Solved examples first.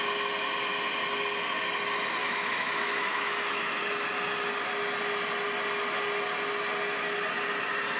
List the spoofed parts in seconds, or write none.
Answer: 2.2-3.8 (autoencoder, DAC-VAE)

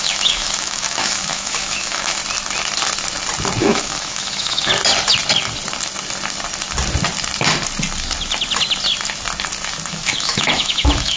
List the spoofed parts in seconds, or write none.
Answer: 0.0-2.2 (autoencoder, DAC-VAE); 3.6-4.7; 9.9-11.2

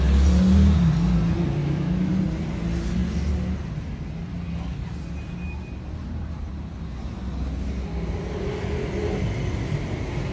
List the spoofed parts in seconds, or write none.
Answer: 1.6-2.1 (autoencoder, DAC-VAE)

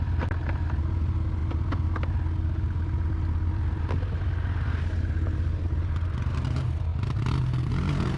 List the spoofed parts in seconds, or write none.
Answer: none

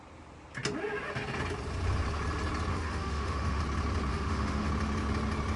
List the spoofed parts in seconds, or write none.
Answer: 2.7-3.6 (autoencoder, DAC-VAE); 4.1-4.7

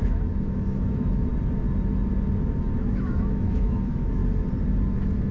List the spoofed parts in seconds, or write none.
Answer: 0.0-1.3 (autoencoder, DAC-VAE); 2.8-4.2

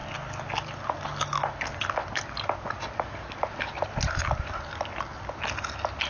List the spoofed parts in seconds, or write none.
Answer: none

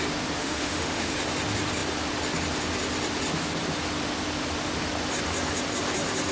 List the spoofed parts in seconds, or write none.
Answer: 0.4-1.1 (autoencoder, DAC-VAE)